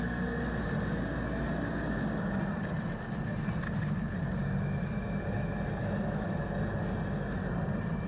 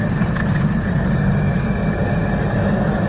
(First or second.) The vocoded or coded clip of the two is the second